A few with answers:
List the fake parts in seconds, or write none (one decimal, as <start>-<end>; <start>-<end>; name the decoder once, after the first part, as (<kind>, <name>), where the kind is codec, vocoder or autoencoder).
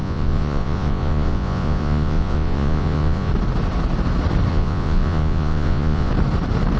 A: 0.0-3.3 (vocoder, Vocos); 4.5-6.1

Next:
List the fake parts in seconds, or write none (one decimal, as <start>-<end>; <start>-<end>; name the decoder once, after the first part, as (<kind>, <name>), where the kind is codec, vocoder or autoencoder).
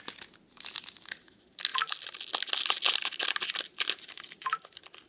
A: none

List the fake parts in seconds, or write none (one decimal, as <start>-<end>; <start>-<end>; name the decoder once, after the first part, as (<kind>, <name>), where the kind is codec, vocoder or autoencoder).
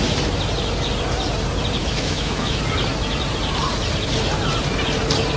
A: 1.8-2.6 (autoencoder, DAC-VAE)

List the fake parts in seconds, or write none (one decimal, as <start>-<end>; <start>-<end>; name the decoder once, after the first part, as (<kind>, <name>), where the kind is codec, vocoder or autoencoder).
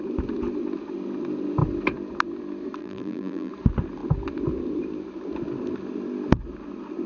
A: 2.8-3.5 (vocoder, BigVGAN v2)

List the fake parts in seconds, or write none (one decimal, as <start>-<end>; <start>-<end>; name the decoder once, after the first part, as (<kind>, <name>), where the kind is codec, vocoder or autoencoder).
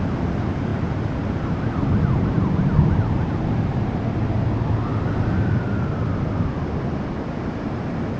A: none